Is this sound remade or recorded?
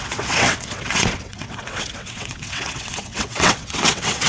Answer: remade